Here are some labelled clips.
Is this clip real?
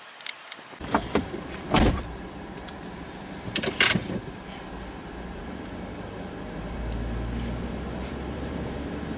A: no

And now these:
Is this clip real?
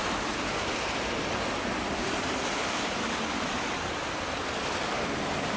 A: yes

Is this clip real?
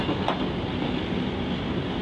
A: yes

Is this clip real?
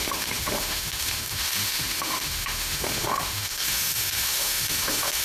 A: no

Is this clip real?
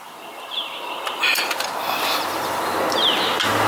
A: yes